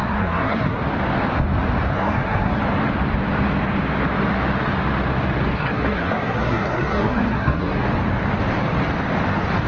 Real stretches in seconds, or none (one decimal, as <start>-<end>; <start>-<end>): 0.8-1.9; 2.6-5.5; 7.8-9.7